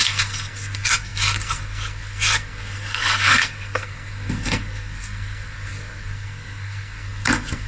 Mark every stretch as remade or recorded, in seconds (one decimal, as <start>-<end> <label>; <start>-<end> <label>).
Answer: 0.0-7.7 remade